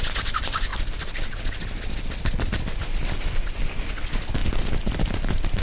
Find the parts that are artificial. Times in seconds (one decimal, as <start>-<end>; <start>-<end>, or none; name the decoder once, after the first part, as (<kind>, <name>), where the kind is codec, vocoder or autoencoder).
0.0-5.6 (vocoder, BigVGAN v2)